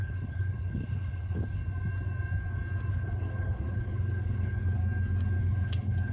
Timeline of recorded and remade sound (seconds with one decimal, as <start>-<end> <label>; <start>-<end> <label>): 0.0-1.6 remade; 1.6-2.9 recorded; 2.9-4.8 remade; 4.8-5.4 recorded; 5.4-6.1 remade

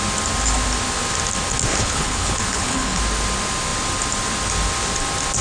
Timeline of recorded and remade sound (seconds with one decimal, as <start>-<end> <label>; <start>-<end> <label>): 0.0-1.7 recorded; 1.7-3.0 remade; 3.0-5.4 recorded

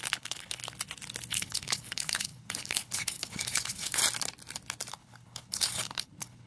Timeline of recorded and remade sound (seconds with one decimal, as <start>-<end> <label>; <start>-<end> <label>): 0.0-0.6 remade; 0.6-1.3 recorded; 1.3-4.0 remade; 4.0-4.9 recorded; 4.9-6.5 remade

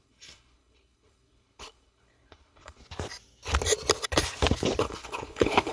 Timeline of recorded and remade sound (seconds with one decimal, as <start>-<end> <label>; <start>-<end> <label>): 0.0-2.8 remade; 2.8-4.8 recorded; 4.8-5.7 remade

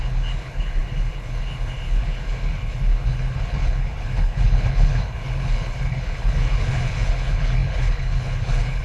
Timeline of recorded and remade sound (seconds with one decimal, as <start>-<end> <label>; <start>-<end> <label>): 0.0-8.8 remade